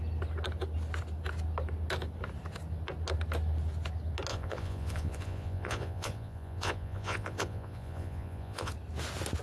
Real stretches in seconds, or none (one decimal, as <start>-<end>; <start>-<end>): 0.0-4.3; 8.7-9.4